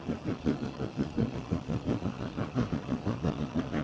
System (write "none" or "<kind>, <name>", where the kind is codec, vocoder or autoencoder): vocoder, Vocos